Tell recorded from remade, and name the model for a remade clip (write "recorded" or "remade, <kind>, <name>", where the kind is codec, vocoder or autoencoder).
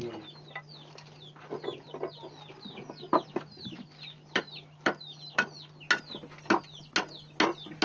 recorded